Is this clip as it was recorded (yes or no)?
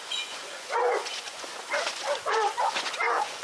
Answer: no